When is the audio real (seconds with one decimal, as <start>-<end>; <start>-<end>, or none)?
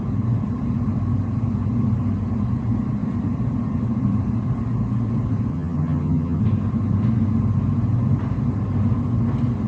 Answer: 0.0-5.5; 6.4-9.7